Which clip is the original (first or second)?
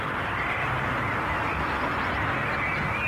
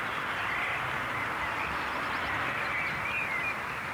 first